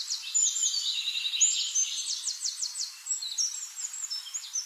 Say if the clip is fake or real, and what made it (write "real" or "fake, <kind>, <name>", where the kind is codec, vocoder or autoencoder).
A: real